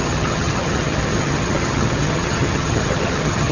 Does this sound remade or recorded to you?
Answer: remade